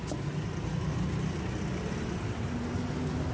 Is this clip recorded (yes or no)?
yes